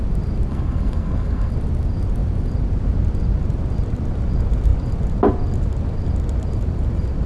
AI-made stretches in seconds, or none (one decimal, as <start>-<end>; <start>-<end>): 0.5-1.5